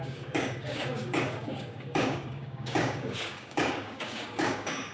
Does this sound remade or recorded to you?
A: remade